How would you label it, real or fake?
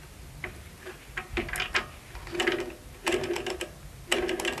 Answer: real